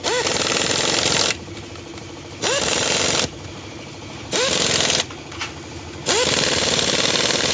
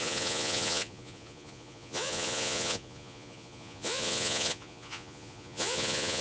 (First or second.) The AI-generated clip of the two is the second